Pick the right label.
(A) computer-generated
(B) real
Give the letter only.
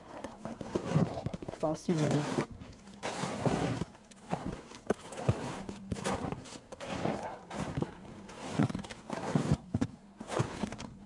A